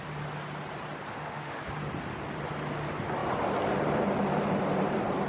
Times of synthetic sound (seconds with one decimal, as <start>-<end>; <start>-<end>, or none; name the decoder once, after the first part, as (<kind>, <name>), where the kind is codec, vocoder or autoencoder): 1.1-1.6 (autoencoder, DAC-VAE)